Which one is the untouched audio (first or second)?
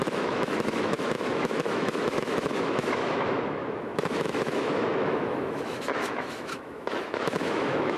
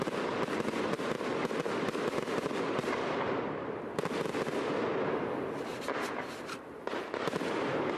second